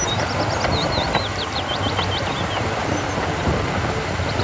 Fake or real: fake